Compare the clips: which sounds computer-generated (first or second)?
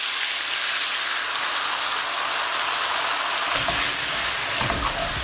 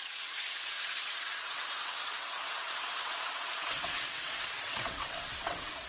second